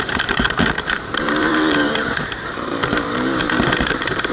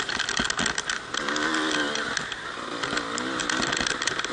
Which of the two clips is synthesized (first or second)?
first